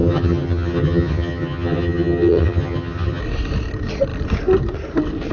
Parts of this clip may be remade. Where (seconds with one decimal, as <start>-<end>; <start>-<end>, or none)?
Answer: 0.0-3.2